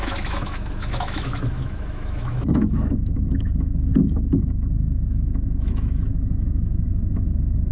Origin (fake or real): fake